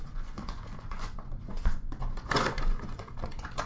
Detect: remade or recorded remade